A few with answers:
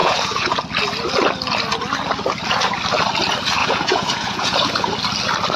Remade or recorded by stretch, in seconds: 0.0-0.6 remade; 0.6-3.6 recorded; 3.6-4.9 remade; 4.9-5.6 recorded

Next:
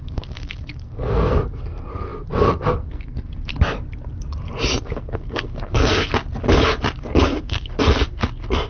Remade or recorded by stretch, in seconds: 0.0-3.5 remade; 3.5-4.8 recorded; 4.8-6.1 remade; 6.1-7.0 recorded; 7.0-8.7 remade

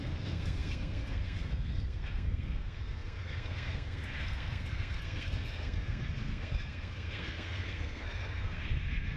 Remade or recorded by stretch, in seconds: 0.0-9.2 remade

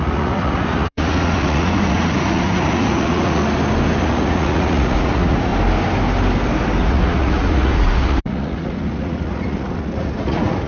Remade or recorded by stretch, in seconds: 0.0-3.4 remade; 3.4-4.0 recorded; 4.0-5.5 remade; 5.5-6.8 recorded; 6.8-10.7 remade

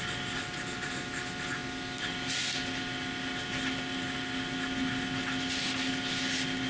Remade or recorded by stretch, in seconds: 0.0-6.7 recorded

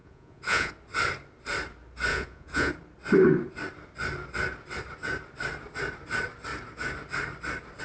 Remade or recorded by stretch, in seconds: 0.0-0.7 remade; 0.7-2.1 recorded; 2.1-2.7 remade; 2.7-7.8 recorded